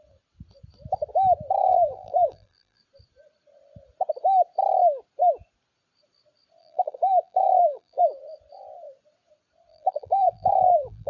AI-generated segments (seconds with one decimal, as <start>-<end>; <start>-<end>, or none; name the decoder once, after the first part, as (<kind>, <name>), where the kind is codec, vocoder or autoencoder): 1.6-2.8 (vocoder, BigVGAN v2); 6.6-8.0; 9.7-11.1

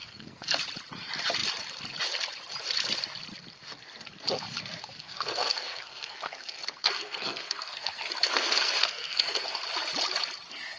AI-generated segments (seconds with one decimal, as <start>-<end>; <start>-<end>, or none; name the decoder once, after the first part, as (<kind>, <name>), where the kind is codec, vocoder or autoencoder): 0.0-0.6 (codec, SNAC); 5.0-9.6

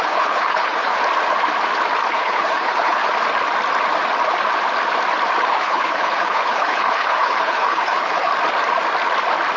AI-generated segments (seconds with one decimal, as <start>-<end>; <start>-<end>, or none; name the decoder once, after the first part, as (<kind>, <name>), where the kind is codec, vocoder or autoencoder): 0.0-0.9 (codec, HILCodec); 2.1-3.0; 5.5-8.3

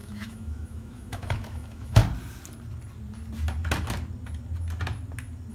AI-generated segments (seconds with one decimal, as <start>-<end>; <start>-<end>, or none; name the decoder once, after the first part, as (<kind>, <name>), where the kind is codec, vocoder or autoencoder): 0.0-2.0 (autoencoder, DAC-VAE)

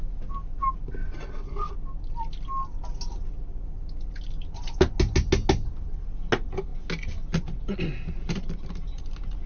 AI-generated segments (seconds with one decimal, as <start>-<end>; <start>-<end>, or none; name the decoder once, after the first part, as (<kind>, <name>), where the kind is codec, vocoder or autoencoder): 1.0-1.7 (vocoder, WaveNeXt)

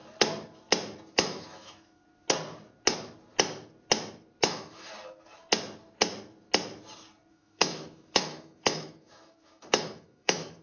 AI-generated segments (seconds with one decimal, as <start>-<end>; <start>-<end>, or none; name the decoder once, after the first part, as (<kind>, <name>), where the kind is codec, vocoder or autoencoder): 1.1-2.0 (autoencoder, DAC-VAE); 4.4-4.9; 7.3-10.6

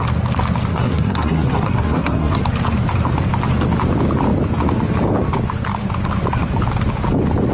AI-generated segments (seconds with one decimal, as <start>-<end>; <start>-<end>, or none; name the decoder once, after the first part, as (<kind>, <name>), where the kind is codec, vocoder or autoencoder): 0.7-2.4 (codec, SNAC)